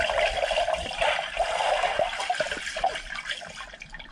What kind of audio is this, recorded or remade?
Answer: recorded